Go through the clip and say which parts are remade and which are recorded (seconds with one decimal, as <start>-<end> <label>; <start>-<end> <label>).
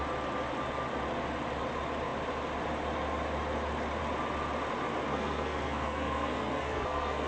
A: 0.0-5.1 recorded; 5.1-7.3 remade